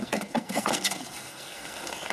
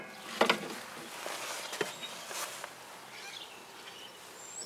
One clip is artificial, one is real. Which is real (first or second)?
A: second